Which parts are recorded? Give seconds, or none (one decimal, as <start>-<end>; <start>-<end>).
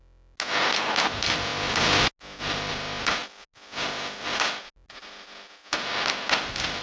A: 0.0-6.8